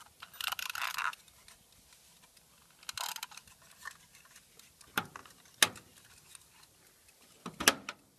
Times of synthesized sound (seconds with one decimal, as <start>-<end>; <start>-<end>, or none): none